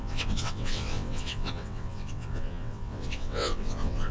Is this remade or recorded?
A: remade